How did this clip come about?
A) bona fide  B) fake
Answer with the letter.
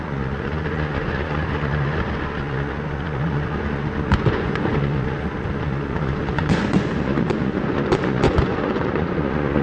B